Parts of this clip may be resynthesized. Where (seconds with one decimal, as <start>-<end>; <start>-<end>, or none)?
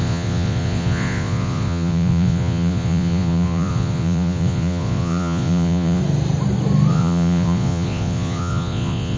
0.0-6.0; 6.9-9.2